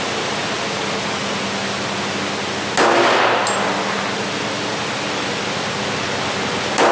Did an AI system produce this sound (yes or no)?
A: no